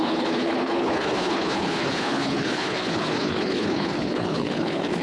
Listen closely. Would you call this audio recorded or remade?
remade